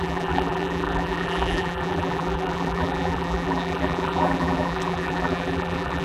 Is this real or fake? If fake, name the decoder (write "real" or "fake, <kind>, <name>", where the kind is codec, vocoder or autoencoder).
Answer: fake, vocoder, BigVGAN v2